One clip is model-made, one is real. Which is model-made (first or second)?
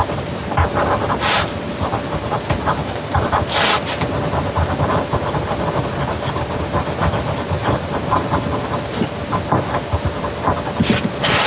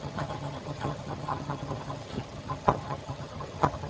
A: second